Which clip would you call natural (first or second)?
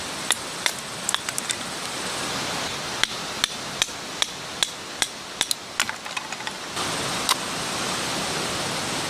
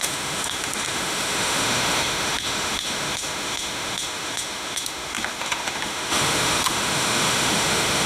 first